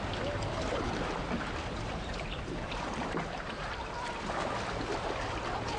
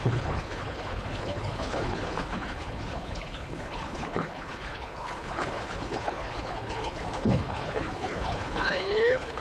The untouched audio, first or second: first